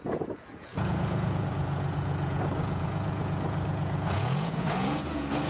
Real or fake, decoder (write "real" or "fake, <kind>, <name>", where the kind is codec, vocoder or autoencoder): fake, vocoder, Vocos